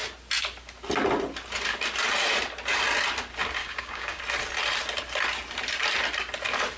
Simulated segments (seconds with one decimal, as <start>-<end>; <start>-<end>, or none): 3.6-4.2